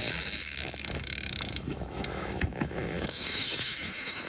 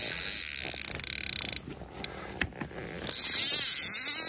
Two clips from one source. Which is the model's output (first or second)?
first